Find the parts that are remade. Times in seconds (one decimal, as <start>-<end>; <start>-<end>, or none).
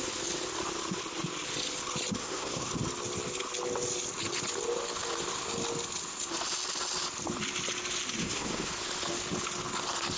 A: 2.2-2.7; 8.2-8.7